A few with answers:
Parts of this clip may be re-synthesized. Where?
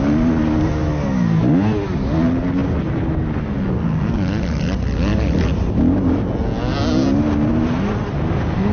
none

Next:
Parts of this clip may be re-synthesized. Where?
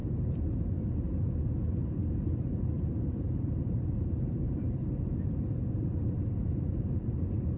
0.0-7.6 (vocoder, BigVGAN v2)